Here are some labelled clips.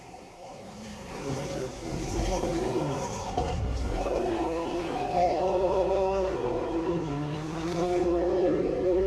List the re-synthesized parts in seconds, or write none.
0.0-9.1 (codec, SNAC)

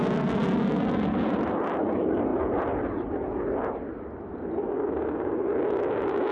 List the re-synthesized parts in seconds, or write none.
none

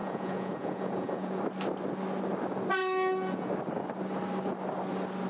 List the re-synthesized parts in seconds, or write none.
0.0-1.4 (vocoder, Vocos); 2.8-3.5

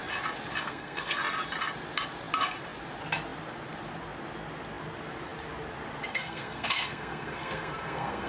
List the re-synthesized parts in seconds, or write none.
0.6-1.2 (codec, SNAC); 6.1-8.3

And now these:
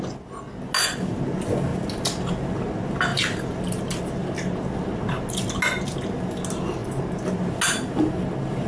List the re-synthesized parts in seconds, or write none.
none